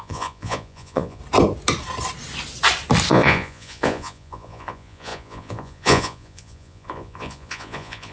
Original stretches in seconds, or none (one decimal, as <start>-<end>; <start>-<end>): 1.2-3.1